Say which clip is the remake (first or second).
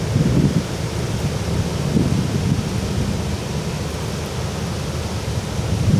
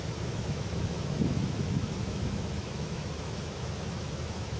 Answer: second